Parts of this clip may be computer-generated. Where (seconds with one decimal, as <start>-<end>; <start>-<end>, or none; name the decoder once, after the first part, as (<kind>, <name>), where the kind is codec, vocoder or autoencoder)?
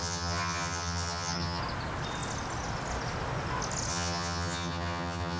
0.0-1.6 (vocoder, HiFi-GAN); 3.9-5.4